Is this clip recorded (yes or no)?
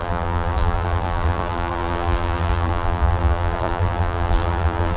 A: no